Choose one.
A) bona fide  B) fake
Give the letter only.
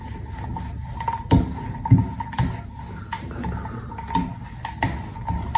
A